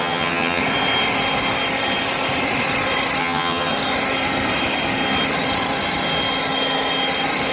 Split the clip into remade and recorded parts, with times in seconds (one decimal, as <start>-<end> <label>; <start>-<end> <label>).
0.0-0.6 remade; 0.6-3.2 recorded; 3.2-3.7 remade; 3.7-7.5 recorded